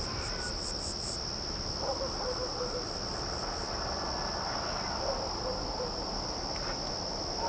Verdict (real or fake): real